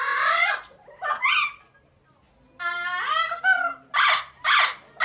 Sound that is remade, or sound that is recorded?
recorded